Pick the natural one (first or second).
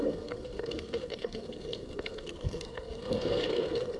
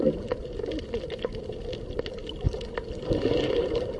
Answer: second